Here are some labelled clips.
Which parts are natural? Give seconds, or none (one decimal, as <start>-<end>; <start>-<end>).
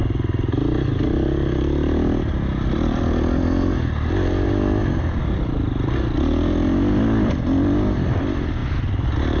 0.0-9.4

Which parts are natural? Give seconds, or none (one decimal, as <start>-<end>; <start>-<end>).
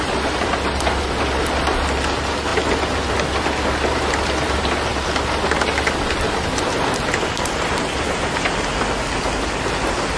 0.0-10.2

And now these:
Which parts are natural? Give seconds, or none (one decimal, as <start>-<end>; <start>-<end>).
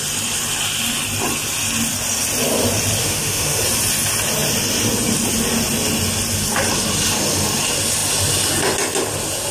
0.0-3.0; 3.6-9.5